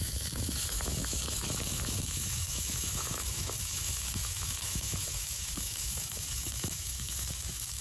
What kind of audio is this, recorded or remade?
remade